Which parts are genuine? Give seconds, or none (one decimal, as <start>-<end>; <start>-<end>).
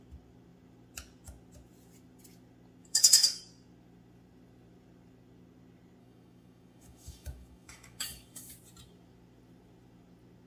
0.0-2.8; 3.4-6.0; 8.5-10.5